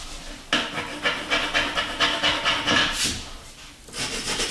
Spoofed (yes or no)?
no